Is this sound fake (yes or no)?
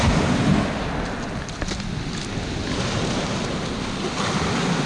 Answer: no